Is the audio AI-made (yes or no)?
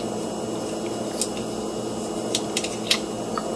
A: no